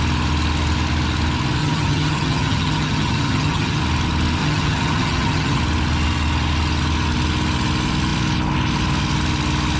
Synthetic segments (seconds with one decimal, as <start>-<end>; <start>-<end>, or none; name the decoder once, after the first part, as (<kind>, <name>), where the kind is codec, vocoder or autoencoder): 1.6-3.8 (vocoder, HiFi-GAN); 4.4-5.6